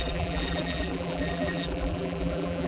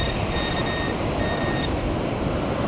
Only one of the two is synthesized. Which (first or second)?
first